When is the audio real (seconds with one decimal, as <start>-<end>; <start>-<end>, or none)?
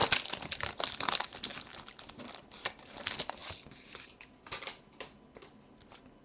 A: 0.0-6.2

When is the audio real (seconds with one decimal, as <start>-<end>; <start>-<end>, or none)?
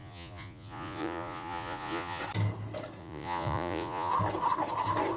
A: 2.2-3.0; 4.1-5.2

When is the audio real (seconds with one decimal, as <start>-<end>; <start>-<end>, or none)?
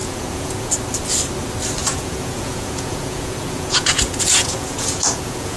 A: 0.7-1.8